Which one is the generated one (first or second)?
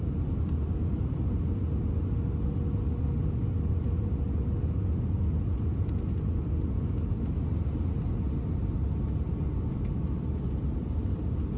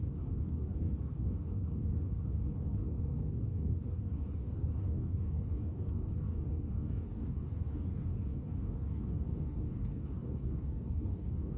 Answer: second